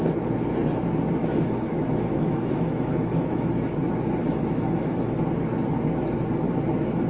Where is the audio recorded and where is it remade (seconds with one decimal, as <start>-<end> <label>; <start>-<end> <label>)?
0.0-1.2 recorded; 1.2-3.7 remade; 3.7-4.2 recorded; 4.2-5.2 remade; 5.2-7.1 recorded